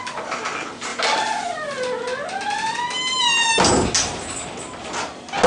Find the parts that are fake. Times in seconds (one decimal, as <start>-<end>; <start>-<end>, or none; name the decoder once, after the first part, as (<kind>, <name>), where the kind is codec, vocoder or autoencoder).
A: none